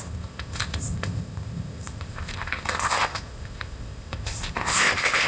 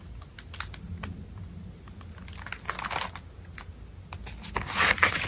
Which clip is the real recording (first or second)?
second